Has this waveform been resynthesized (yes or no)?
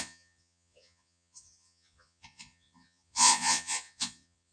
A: yes